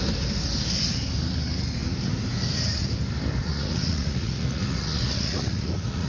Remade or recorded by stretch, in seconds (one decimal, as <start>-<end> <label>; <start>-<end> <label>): 0.0-3.4 recorded; 3.4-6.1 remade